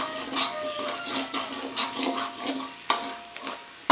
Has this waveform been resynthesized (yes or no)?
no